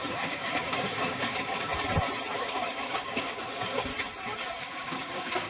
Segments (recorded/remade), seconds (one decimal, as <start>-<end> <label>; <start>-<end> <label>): 0.0-1.7 remade; 1.7-2.4 recorded; 2.4-3.9 remade; 3.9-4.6 recorded; 4.6-5.5 remade